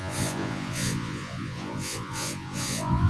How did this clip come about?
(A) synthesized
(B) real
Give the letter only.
A